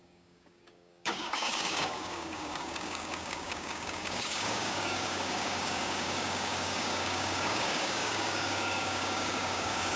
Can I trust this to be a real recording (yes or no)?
no